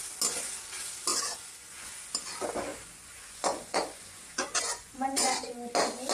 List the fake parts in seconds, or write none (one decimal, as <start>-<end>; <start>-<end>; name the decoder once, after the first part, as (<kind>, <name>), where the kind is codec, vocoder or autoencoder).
1.1-2.1 (vocoder, Vocos); 2.7-5.3